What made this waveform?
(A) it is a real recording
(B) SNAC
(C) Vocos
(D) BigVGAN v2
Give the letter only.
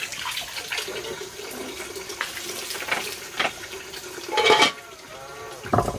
D